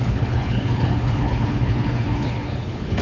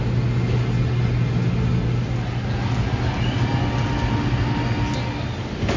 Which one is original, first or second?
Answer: second